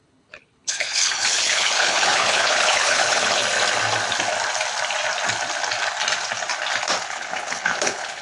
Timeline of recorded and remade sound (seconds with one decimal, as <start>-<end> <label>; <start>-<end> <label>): 0.0-3.4 remade; 3.4-7.0 recorded; 7.0-8.2 remade